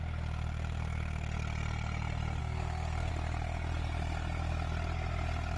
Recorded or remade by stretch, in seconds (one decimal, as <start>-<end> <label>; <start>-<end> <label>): 0.0-2.4 recorded; 2.4-3.1 remade; 3.1-5.6 recorded

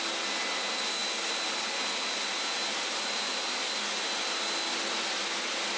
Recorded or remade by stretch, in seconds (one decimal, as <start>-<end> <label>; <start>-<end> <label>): 0.0-5.8 recorded

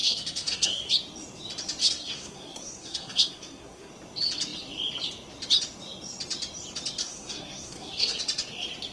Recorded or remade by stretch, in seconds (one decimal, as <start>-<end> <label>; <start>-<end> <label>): 0.0-0.9 remade; 0.9-1.8 recorded; 1.8-3.9 remade; 3.9-7.0 recorded; 7.0-8.2 remade; 8.2-8.9 recorded

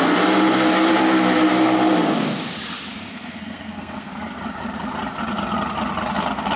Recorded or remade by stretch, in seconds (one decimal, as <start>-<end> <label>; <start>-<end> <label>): 0.0-3.1 recorded; 3.1-4.1 remade; 4.1-6.6 recorded

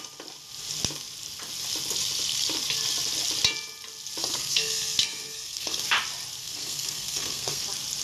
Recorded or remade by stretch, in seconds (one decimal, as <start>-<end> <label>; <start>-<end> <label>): 0.0-4.2 recorded; 4.2-5.8 remade; 5.8-6.4 recorded; 6.4-7.6 remade; 7.6-8.0 recorded

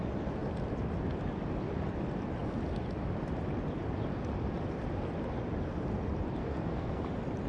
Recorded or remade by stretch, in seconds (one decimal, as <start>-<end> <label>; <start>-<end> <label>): 0.0-6.4 recorded; 6.4-7.0 remade; 7.0-7.5 recorded

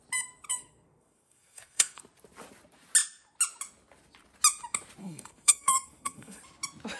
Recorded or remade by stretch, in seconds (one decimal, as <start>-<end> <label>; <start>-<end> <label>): 0.0-0.5 recorded; 0.5-2.0 remade; 2.0-5.0 recorded; 5.0-6.4 remade; 6.4-7.0 recorded

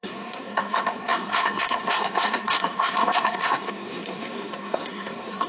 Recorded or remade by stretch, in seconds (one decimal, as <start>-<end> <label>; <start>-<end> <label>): 0.0-5.5 remade